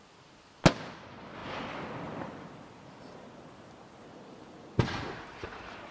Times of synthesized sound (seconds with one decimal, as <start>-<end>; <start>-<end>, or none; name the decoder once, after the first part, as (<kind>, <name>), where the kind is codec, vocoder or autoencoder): none